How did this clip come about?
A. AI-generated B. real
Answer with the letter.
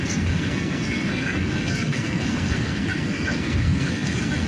A